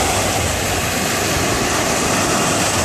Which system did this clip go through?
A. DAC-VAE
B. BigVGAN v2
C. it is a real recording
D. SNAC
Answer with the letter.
C